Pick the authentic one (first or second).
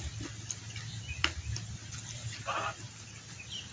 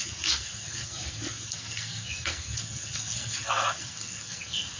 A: first